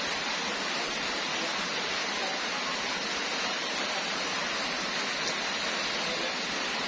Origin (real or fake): real